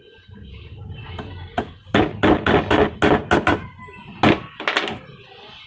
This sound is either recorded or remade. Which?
recorded